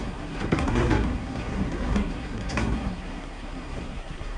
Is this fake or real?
fake